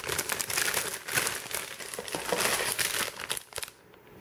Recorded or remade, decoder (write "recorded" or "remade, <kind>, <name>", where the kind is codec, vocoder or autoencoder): recorded